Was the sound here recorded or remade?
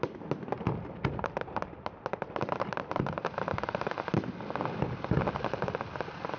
recorded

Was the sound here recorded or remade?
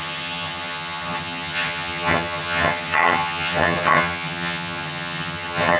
remade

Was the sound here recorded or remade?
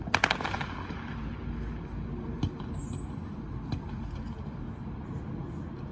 recorded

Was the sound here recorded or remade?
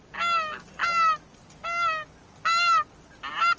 recorded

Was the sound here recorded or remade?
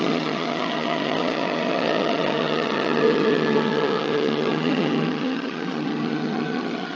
remade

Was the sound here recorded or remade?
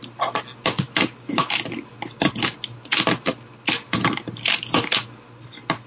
recorded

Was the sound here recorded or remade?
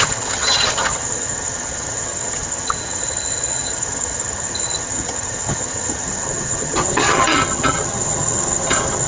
remade